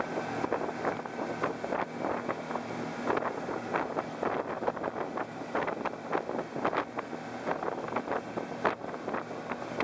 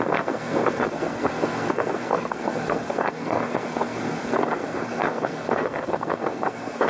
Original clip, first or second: first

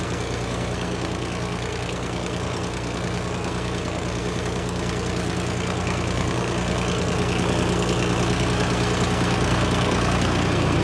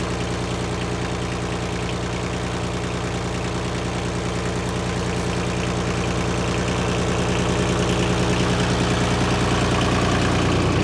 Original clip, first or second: second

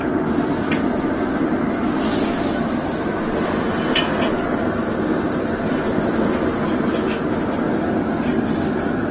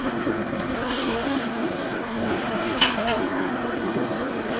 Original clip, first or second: first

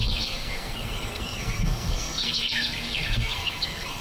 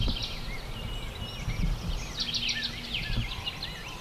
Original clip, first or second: second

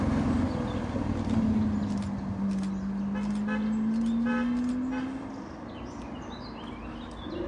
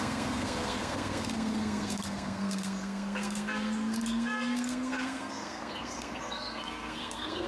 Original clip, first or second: first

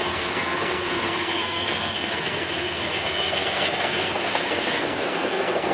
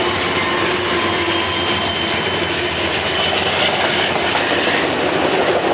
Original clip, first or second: second